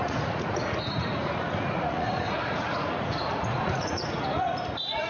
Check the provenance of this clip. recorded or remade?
remade